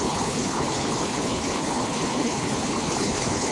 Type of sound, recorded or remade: remade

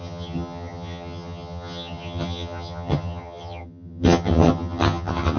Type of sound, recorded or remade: remade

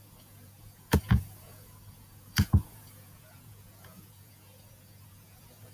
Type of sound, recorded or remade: remade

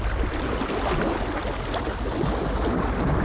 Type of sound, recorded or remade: recorded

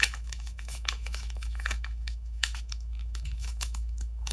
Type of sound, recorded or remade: remade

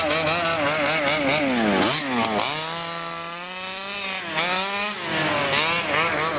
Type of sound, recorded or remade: recorded